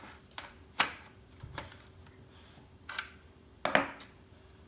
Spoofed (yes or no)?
no